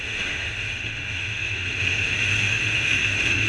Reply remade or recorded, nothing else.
remade